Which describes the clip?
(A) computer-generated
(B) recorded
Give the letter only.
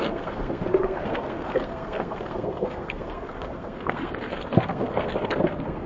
A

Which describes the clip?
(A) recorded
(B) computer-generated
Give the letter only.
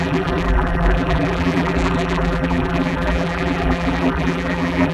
B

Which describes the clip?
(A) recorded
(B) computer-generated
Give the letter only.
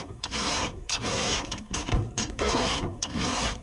B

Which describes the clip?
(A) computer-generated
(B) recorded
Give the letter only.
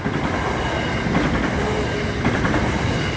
B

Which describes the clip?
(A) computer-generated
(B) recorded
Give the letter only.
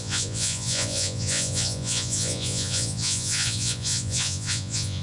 A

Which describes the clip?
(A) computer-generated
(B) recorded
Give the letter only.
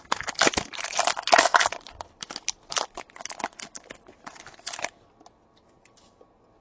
B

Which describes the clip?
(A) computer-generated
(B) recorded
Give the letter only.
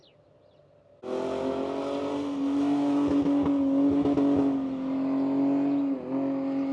B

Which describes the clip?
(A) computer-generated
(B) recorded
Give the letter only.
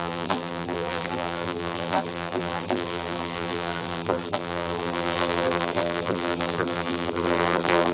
A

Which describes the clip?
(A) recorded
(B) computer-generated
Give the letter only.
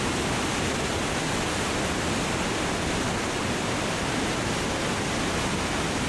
A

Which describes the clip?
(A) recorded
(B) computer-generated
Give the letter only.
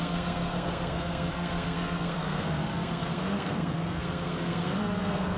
B